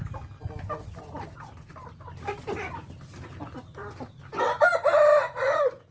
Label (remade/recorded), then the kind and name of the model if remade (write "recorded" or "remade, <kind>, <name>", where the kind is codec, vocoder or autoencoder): recorded